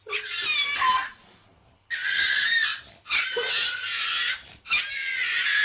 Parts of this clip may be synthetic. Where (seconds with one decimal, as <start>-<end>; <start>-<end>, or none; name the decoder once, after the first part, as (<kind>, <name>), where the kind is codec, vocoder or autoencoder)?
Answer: none